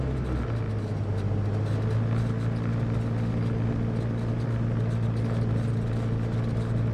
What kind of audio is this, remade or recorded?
recorded